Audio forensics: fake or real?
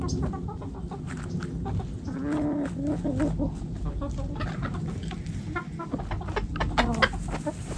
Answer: real